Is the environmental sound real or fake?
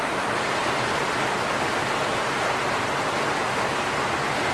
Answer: real